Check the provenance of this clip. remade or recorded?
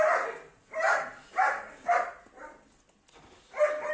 recorded